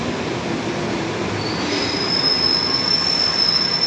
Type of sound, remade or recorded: recorded